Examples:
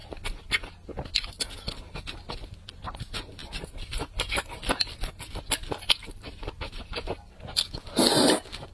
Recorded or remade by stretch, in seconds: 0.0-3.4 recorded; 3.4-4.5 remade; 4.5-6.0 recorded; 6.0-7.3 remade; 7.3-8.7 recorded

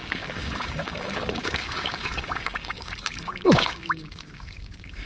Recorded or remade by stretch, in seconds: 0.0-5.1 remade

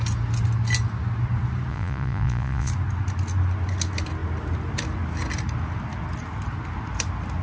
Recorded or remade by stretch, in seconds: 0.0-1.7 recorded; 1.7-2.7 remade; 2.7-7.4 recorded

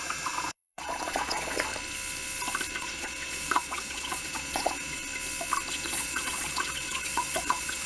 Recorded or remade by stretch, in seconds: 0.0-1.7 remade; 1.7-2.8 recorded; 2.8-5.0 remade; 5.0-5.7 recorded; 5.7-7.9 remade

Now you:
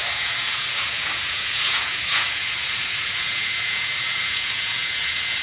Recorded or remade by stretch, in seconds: 0.0-5.4 remade

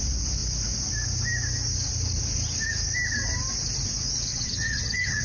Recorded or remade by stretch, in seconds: 0.0-4.3 recorded; 4.3-5.2 remade

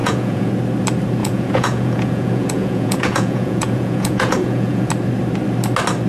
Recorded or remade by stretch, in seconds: 0.0-0.5 remade; 0.5-1.2 recorded; 1.2-4.9 remade; 4.9-6.1 recorded